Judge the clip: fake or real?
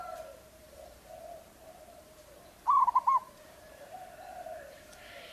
fake